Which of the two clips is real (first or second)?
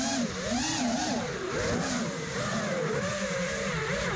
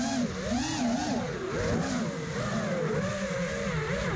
second